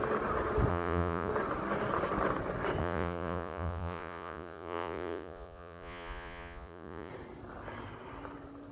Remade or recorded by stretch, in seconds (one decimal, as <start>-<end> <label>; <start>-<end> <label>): 0.0-0.7 recorded; 0.7-1.3 remade; 1.3-2.8 recorded; 2.8-7.1 remade; 7.1-8.7 recorded